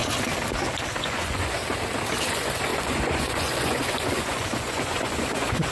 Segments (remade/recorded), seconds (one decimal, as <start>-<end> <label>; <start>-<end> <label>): 0.0-1.0 recorded; 1.0-1.6 remade; 1.6-2.3 recorded; 2.3-5.7 remade